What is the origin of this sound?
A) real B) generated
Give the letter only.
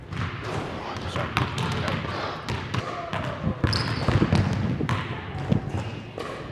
A